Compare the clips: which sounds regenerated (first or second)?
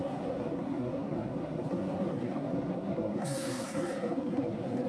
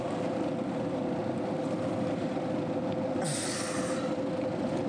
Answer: first